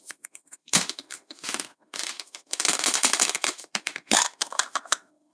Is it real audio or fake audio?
fake